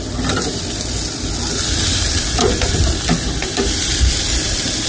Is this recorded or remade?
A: remade